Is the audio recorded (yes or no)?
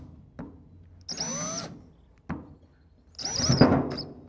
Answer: yes